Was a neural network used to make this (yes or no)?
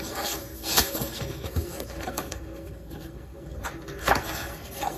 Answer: yes